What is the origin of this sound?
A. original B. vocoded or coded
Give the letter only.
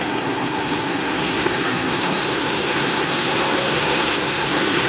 B